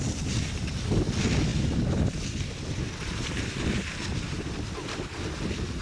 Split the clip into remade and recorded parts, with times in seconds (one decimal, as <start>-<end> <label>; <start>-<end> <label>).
0.0-5.8 recorded